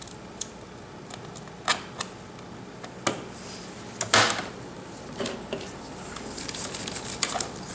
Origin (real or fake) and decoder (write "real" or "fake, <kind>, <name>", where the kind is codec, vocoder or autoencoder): real